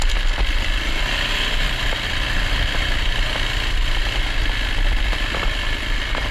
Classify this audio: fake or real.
real